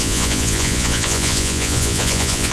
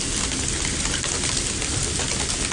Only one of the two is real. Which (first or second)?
second